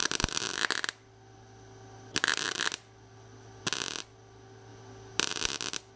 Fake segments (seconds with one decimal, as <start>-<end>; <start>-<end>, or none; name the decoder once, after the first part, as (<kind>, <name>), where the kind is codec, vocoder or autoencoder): none